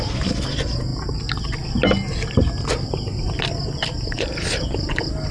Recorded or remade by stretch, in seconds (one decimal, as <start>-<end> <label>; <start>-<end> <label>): 0.0-5.3 recorded